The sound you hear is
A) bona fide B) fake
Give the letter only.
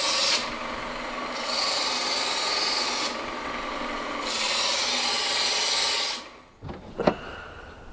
A